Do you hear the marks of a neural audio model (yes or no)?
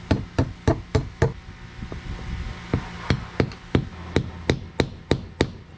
no